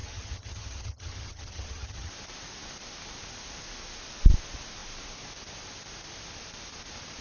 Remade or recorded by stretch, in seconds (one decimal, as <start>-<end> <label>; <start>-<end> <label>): 0.0-2.1 remade; 2.1-7.2 recorded